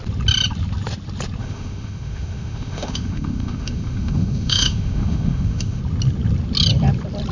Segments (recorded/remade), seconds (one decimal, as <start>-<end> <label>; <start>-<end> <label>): 0.0-1.4 recorded; 1.4-5.8 remade; 5.8-7.3 recorded